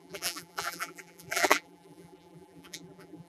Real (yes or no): no